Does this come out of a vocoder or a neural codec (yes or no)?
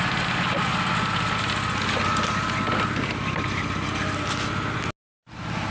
no